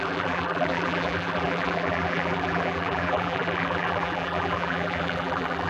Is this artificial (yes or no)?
yes